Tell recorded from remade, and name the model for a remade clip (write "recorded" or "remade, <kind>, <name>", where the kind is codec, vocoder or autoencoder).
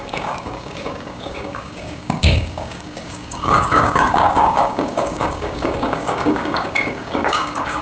remade, codec, DAC